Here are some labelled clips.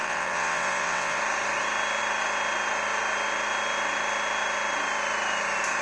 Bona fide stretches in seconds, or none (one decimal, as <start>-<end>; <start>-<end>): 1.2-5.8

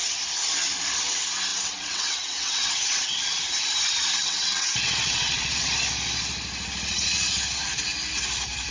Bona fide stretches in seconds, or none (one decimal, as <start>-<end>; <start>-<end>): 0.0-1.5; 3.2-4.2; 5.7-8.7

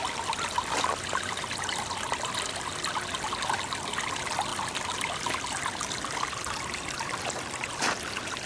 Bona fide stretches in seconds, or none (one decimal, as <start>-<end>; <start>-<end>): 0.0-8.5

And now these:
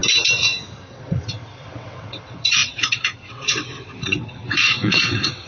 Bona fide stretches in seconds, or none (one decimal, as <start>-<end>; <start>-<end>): 0.0-0.9

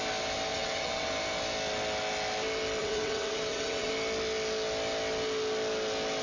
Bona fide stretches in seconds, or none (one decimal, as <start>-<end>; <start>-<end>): 0.0-0.5; 1.1-2.8; 3.9-6.2

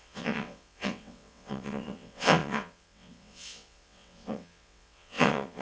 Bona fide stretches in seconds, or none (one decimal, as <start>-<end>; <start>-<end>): none